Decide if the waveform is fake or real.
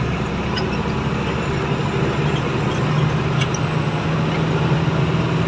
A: real